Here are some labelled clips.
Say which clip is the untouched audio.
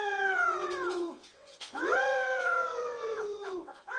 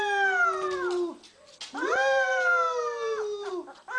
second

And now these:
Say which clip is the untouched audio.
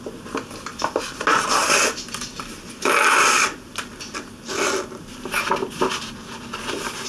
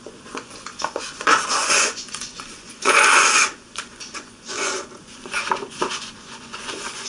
first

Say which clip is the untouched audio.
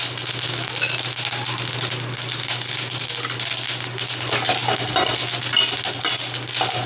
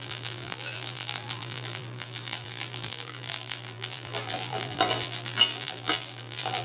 first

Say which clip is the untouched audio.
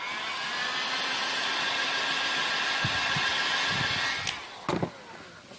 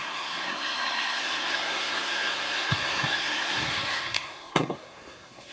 first